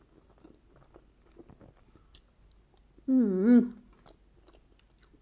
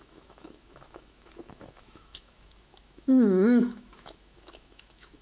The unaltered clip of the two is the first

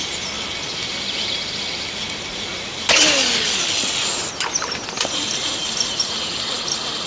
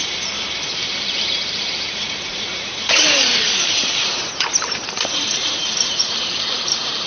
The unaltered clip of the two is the first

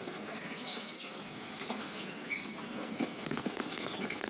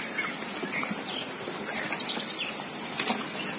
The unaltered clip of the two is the second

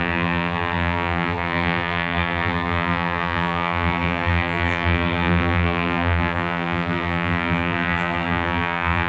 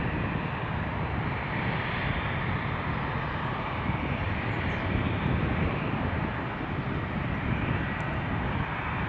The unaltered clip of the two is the second